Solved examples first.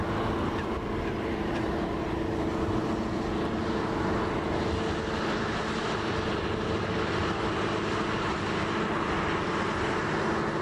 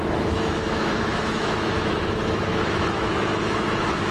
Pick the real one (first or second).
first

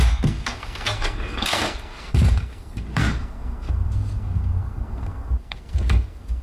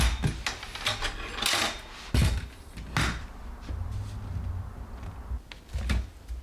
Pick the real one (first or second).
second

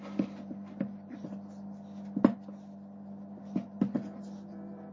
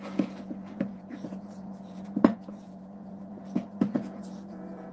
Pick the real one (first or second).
first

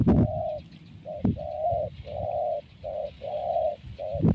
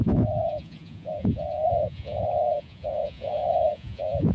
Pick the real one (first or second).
first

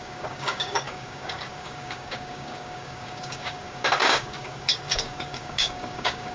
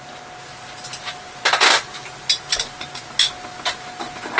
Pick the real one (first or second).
second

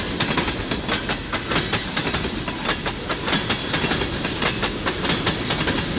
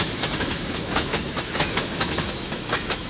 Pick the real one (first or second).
first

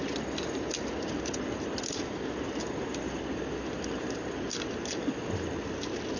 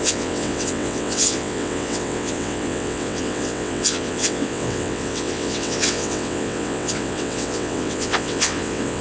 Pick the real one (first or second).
first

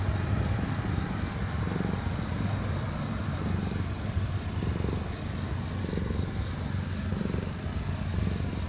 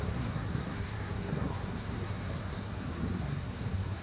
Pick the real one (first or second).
first